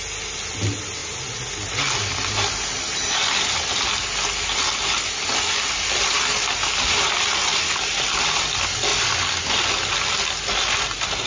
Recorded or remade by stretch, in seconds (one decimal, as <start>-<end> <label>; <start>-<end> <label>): 0.0-11.3 recorded